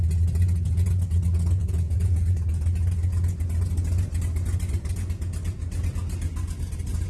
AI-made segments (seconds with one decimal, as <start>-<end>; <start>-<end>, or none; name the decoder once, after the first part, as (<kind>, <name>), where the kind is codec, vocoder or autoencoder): 1.6-2.3 (vocoder, Vocos)